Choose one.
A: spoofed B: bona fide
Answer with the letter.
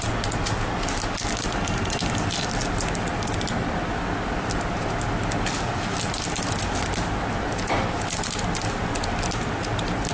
B